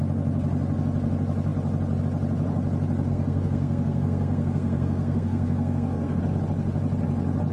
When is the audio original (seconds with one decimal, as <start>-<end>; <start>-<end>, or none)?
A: 0.0-3.1; 6.2-7.5